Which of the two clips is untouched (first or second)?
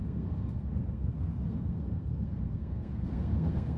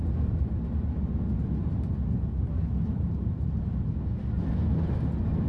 second